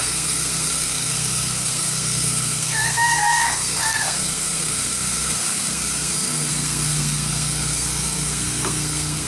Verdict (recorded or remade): remade